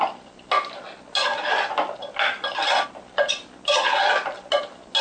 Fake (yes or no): no